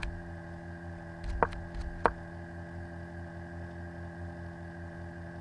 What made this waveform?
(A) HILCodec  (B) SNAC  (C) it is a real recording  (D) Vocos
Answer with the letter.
C